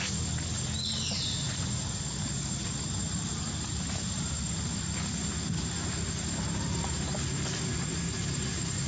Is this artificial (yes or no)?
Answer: no